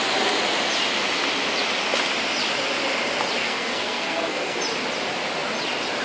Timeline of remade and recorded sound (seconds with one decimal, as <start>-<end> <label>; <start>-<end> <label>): 0.0-3.4 recorded; 3.4-4.6 remade; 4.6-6.0 recorded

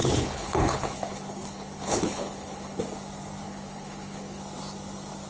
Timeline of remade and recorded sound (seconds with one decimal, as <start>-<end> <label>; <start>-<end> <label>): 0.0-2.8 remade; 2.8-3.4 recorded; 3.4-4.4 remade; 4.4-5.3 recorded

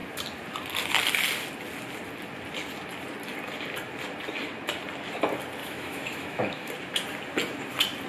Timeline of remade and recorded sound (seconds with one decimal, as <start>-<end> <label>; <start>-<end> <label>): 0.0-5.6 recorded; 5.6-6.7 remade; 6.7-8.1 recorded

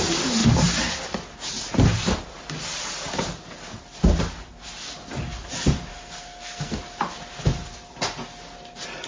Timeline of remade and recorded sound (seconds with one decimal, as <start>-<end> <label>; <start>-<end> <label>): 0.0-5.9 recorded; 5.9-6.8 remade; 6.8-9.1 recorded

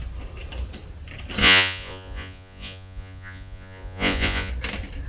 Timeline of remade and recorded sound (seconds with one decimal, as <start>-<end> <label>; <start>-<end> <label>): 0.0-1.4 recorded; 1.4-4.5 remade; 4.5-5.1 recorded

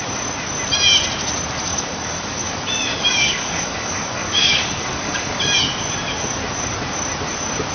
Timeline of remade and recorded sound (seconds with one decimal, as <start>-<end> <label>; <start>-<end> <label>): 0.0-1.7 recorded; 1.7-2.6 remade; 2.6-3.0 recorded; 3.0-5.4 remade; 5.4-7.7 recorded

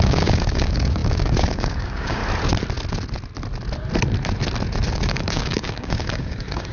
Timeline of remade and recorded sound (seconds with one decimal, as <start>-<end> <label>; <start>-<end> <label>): 0.0-2.2 remade; 2.2-4.9 recorded; 4.9-6.7 remade